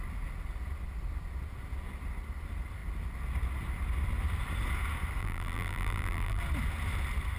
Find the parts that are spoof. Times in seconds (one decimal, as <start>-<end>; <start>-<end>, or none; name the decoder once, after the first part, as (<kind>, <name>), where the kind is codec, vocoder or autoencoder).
5.2-6.4 (vocoder, BigVGAN v2)

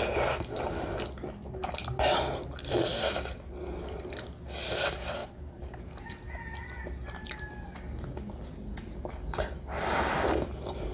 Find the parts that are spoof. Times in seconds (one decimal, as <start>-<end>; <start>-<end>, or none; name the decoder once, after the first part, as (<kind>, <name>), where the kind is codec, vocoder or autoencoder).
5.2-6.1 (vocoder, BigVGAN v2)